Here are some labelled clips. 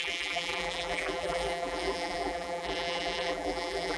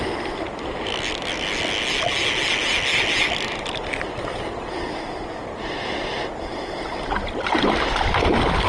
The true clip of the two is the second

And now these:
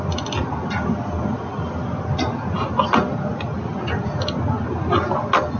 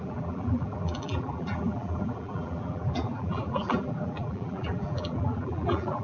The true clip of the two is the first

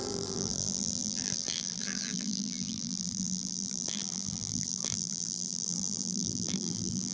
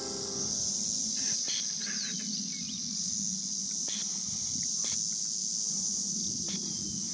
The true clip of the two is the second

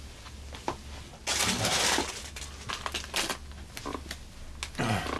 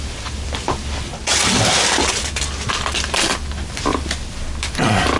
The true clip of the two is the first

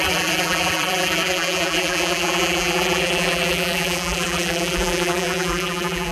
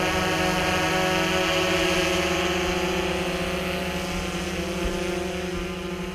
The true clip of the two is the second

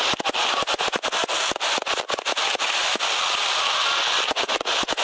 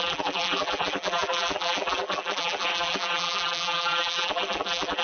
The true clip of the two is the first